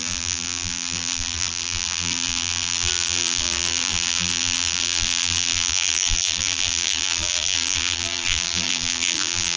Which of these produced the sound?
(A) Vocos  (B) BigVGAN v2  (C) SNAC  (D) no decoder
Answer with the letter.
B